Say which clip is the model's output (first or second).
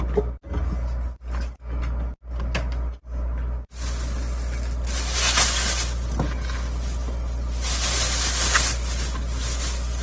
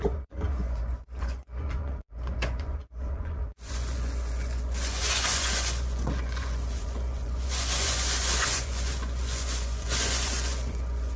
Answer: second